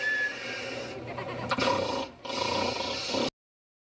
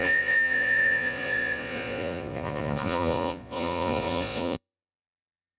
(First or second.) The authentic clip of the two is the first